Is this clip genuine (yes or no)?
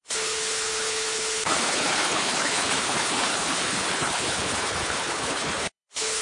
no